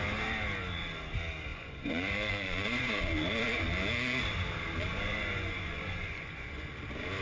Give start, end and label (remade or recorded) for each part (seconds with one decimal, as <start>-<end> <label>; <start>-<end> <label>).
0.0-1.5 recorded; 1.5-3.0 remade; 3.0-4.9 recorded; 4.9-6.7 remade; 6.7-7.2 recorded